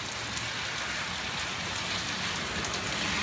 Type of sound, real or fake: real